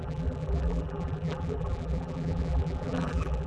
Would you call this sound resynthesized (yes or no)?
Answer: yes